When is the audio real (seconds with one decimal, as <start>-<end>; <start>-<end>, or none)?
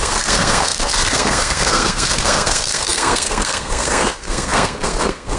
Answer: none